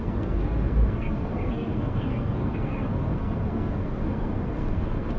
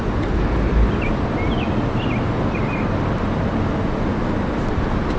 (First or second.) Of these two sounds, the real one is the second